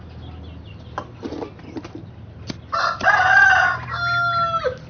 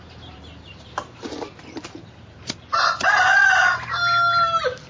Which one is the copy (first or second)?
second